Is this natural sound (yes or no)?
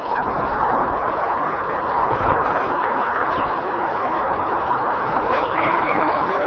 no